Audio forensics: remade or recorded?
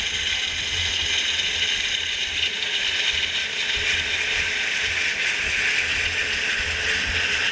recorded